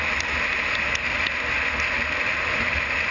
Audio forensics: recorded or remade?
recorded